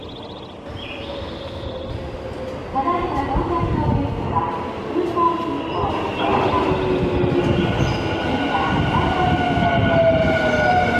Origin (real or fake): real